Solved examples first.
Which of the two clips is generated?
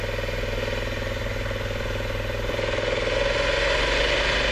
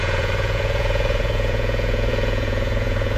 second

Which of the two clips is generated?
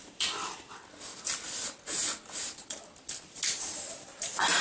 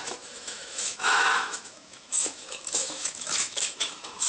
second